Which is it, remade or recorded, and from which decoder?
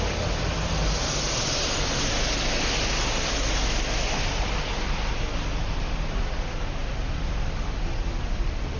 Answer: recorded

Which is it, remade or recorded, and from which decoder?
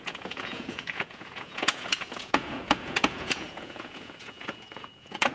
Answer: remade, vocoder, Vocos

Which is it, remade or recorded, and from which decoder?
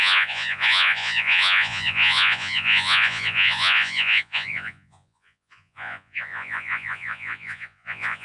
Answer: remade, vocoder, Vocos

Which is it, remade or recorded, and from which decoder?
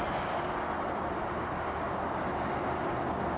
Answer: recorded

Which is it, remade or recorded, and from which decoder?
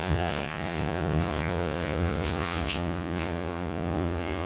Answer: remade, vocoder, Vocos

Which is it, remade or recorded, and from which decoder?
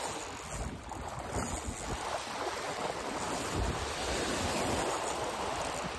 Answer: recorded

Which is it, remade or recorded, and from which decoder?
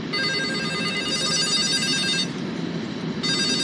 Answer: recorded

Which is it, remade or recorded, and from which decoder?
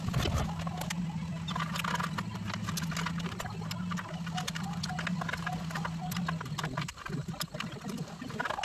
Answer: recorded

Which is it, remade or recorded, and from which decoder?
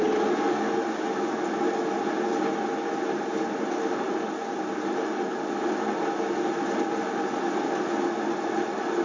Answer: recorded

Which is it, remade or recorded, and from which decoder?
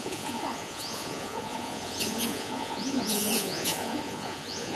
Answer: remade, vocoder, Vocos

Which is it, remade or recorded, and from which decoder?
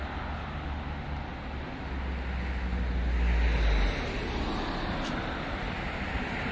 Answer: recorded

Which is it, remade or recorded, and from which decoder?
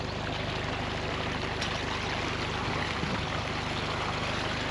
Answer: recorded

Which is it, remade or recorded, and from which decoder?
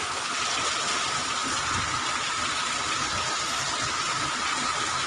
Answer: recorded